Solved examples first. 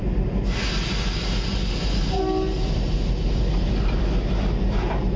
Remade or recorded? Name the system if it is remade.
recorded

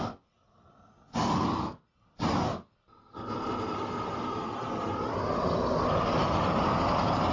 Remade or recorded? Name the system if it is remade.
recorded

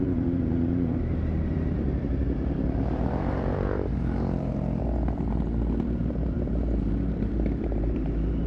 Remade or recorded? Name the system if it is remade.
remade, vocoder, BigVGAN v2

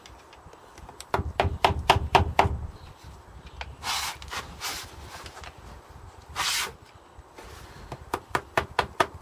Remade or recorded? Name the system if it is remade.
recorded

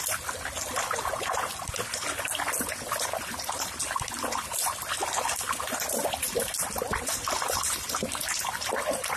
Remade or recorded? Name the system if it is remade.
remade, vocoder, BigVGAN v2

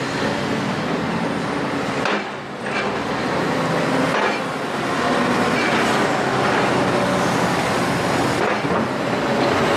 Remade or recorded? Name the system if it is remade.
recorded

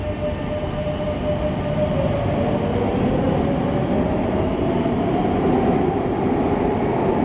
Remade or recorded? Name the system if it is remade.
recorded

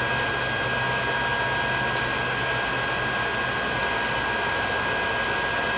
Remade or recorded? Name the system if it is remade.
recorded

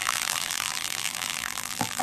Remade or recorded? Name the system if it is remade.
remade, vocoder, BigVGAN v2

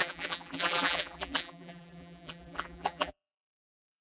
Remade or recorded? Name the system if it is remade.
remade, vocoder, BigVGAN v2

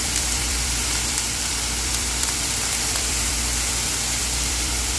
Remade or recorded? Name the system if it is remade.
remade, vocoder, BigVGAN v2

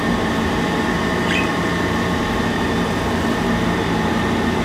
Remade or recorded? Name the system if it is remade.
remade, vocoder, BigVGAN v2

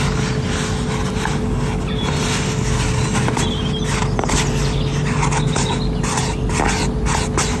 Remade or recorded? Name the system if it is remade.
recorded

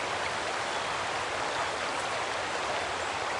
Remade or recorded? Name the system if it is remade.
recorded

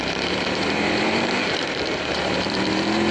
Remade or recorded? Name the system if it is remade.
remade, vocoder, BigVGAN v2